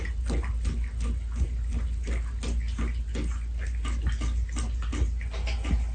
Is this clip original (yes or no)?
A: yes